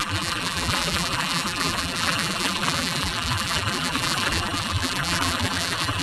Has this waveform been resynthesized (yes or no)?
yes